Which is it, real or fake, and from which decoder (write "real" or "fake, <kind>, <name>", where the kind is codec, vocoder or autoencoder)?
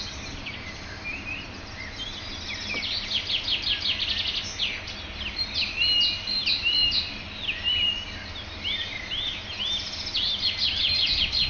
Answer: real